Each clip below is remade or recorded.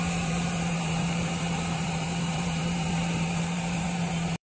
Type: remade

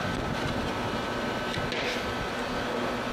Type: recorded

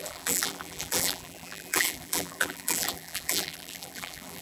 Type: remade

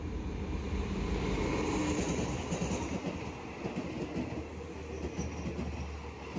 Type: recorded